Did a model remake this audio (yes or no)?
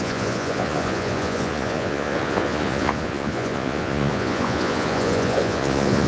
yes